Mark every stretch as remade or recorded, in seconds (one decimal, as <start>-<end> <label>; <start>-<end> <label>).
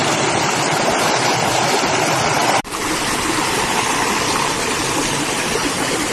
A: 0.0-2.4 recorded; 2.4-6.1 remade